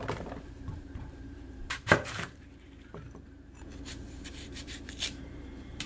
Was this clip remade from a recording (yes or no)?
yes